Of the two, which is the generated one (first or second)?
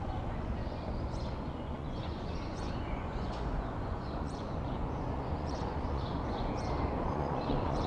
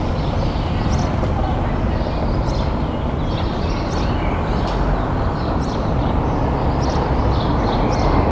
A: first